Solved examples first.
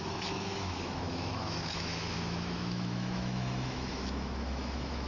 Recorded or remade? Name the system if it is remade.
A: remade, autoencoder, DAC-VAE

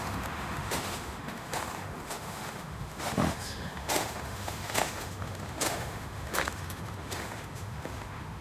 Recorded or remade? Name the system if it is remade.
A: remade, autoencoder, DAC-VAE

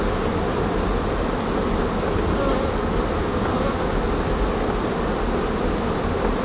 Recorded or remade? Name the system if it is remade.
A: recorded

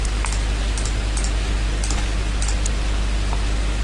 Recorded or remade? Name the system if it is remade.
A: recorded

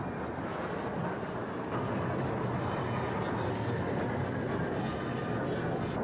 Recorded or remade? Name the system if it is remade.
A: recorded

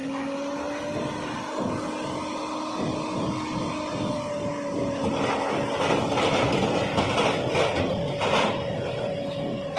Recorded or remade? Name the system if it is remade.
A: recorded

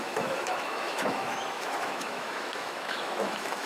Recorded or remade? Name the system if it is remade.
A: remade, autoencoder, DAC-VAE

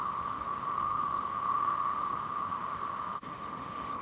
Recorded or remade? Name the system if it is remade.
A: remade, autoencoder, DAC-VAE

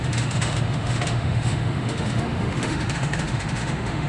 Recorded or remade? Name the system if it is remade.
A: remade, autoencoder, DAC-VAE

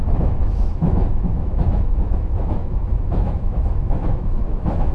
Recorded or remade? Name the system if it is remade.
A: remade, autoencoder, DAC-VAE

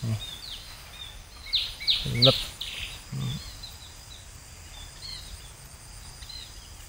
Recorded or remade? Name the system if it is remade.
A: recorded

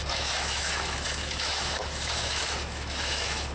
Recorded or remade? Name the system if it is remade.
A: remade, autoencoder, DAC-VAE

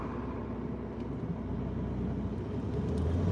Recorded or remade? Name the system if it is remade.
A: recorded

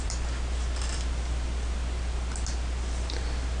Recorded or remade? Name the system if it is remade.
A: recorded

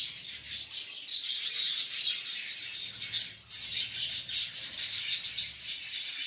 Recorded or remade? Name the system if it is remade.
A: recorded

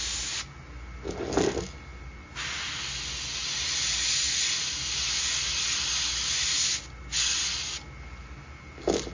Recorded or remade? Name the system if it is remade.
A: recorded